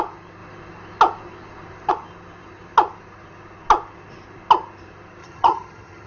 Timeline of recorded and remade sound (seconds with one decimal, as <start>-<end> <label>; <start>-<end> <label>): 0.0-5.2 recorded; 5.2-6.1 remade